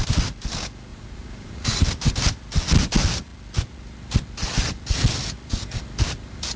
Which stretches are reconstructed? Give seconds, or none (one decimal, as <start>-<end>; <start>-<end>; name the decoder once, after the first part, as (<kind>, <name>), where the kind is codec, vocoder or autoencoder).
0.9-1.8 (vocoder, Vocos)